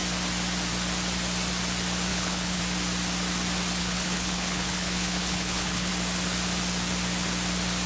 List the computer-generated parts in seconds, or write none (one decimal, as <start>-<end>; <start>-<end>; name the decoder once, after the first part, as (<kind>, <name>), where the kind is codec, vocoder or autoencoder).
2.1-2.6 (codec, HILCodec); 3.8-5.9